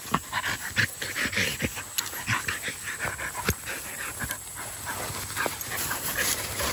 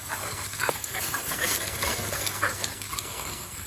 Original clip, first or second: first